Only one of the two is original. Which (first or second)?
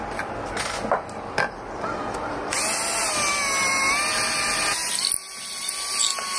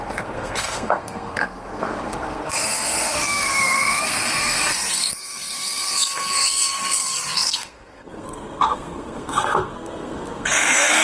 first